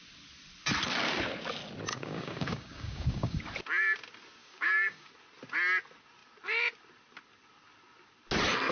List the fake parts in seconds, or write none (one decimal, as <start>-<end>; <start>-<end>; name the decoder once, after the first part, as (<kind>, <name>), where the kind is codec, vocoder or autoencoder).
1.9-3.4 (codec, DAC); 4.4-5.1